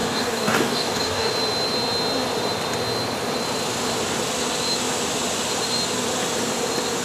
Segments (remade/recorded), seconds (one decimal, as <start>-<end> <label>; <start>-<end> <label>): 0.0-1.3 remade; 1.3-7.0 recorded